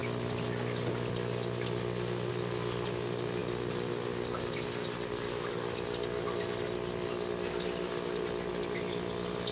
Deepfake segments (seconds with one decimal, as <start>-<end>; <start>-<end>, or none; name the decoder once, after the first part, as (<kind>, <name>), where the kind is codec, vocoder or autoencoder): none